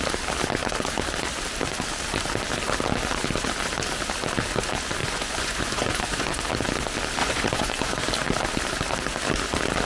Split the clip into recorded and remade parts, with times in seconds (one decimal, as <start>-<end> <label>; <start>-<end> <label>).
0.0-5.0 recorded; 5.0-6.4 remade; 6.4-7.2 recorded; 7.2-8.1 remade; 8.1-9.9 recorded